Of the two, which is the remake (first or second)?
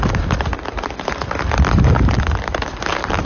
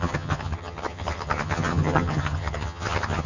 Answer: second